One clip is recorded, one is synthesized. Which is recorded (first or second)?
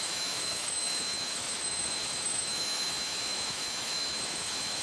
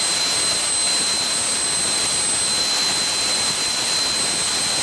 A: second